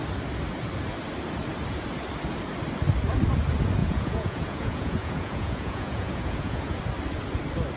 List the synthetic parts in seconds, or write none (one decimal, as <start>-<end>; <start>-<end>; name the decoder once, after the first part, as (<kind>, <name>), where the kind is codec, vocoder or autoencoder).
3.8-6.8 (vocoder, Vocos)